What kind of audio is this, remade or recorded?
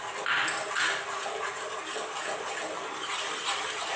recorded